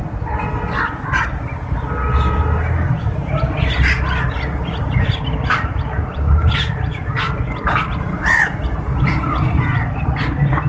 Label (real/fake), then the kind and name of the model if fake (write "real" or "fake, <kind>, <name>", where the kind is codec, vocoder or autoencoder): real